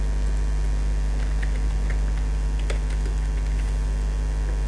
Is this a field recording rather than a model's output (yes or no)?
yes